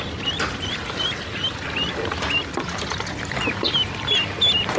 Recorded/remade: recorded